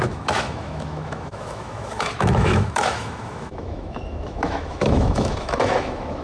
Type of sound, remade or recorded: remade